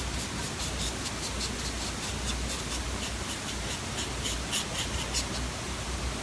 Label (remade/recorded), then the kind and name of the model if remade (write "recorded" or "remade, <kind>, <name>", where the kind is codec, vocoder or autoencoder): recorded